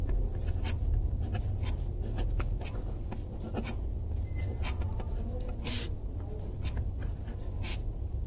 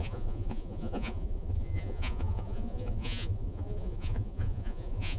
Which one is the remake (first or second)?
second